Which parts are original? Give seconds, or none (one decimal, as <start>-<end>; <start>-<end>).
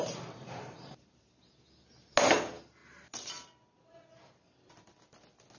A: 0.0-5.6